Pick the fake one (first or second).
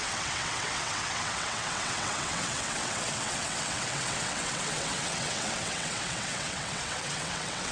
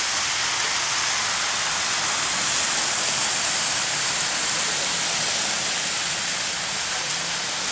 first